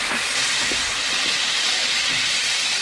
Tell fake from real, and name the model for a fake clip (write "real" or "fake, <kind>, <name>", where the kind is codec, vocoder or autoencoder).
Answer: real